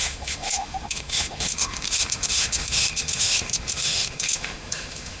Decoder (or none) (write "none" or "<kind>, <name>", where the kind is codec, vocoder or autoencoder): autoencoder, DAC-VAE